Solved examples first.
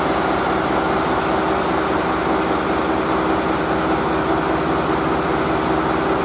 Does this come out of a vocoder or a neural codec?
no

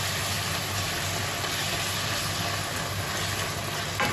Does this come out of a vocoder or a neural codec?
no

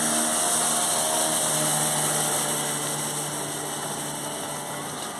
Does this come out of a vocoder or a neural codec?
no